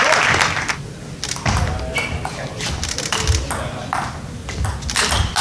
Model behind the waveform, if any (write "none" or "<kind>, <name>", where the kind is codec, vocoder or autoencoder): none